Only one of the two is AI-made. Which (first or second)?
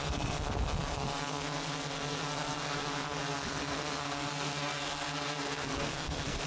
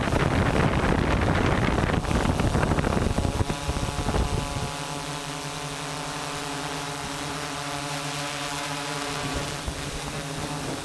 first